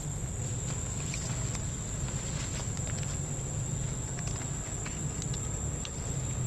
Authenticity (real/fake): real